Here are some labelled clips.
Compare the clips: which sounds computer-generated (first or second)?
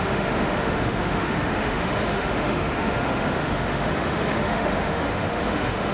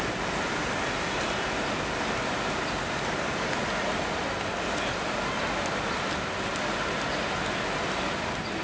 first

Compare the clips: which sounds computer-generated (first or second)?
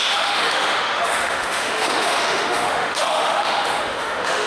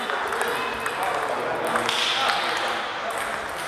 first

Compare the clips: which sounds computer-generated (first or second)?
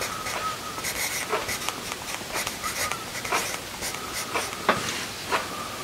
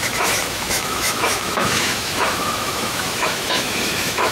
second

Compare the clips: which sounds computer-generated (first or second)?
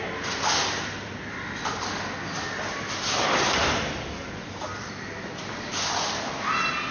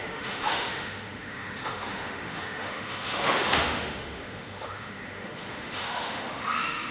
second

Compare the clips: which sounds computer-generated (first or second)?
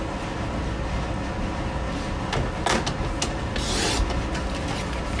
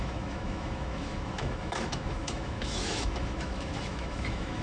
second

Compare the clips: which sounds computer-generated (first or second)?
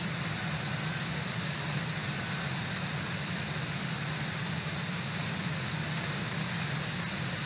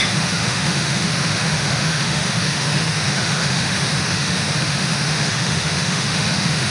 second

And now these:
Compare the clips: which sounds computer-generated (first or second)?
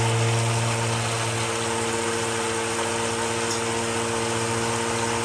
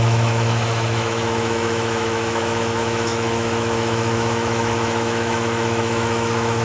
second